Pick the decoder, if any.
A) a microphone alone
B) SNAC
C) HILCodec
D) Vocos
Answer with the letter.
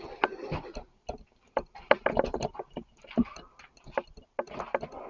A